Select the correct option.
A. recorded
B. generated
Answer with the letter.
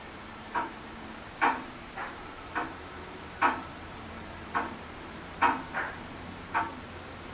B